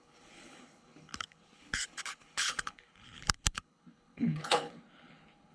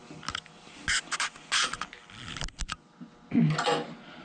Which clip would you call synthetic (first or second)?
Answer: first